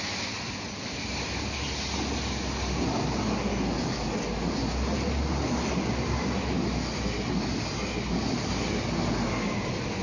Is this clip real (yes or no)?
yes